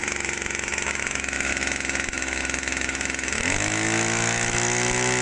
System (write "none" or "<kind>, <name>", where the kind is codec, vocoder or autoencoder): autoencoder, DAC-VAE